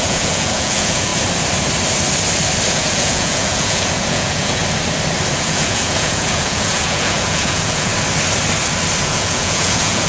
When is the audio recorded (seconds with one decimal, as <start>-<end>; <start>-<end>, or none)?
1.1-2.7; 4.6-5.3; 7.9-9.0